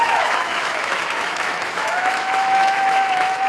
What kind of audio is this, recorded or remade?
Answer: remade